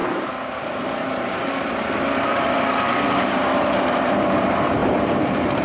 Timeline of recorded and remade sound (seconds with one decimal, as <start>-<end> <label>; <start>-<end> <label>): 0.0-5.6 remade

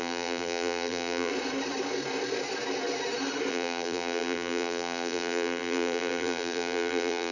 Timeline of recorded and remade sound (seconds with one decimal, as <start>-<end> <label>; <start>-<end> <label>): 0.0-1.3 remade; 1.3-3.5 recorded; 3.5-7.3 remade